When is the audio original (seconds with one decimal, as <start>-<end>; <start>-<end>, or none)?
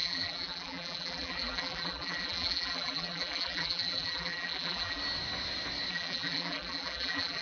5.0-5.9